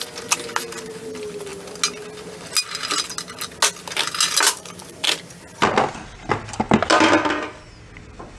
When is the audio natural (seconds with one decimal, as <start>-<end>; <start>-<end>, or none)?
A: 0.0-8.4

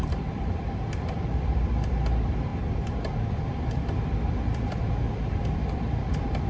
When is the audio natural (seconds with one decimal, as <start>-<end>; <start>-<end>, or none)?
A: 2.5-3.3

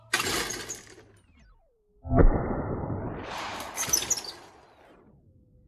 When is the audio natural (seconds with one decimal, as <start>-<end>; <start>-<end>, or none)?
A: 0.0-2.2; 4.1-5.7

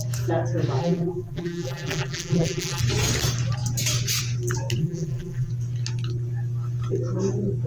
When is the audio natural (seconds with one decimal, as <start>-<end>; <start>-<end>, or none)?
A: 0.0-0.8; 2.8-4.8; 5.5-7.7

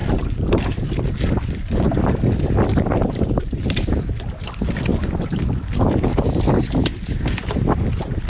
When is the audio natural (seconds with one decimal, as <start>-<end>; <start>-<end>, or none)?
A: 1.1-2.7; 3.9-4.9; 5.7-8.3

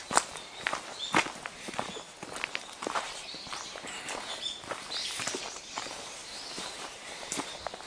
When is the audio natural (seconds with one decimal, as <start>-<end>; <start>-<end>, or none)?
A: 0.7-2.7

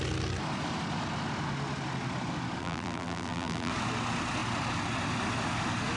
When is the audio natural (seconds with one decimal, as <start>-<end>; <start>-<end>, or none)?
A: 0.0-2.6; 3.7-6.0